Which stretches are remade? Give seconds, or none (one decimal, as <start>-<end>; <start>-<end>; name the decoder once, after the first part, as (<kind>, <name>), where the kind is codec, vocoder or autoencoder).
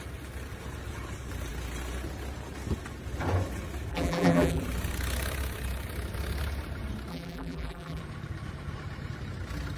3.9-4.6 (vocoder, BigVGAN v2); 7.1-8.0